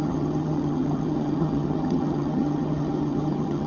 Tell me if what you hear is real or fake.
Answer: fake